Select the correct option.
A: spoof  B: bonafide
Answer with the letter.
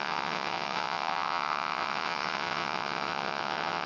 A